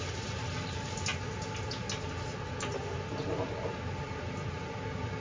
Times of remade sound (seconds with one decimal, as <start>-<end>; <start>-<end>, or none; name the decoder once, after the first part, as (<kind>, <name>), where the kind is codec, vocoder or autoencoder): none